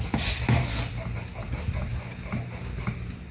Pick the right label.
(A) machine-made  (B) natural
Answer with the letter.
B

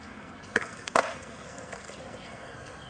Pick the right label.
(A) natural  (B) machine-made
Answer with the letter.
B